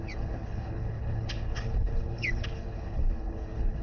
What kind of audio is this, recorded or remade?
remade